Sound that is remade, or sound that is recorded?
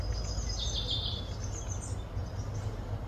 recorded